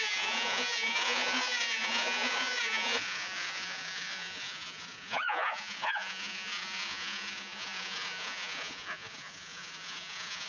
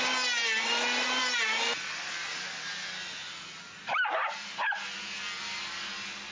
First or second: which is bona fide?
second